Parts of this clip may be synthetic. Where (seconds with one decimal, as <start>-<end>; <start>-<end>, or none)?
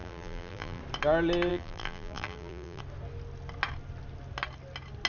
0.0-0.8; 1.5-2.8